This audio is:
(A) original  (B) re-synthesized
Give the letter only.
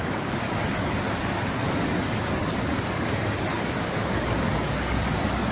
B